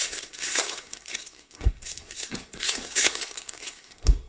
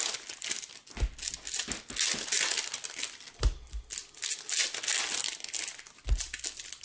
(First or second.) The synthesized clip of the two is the first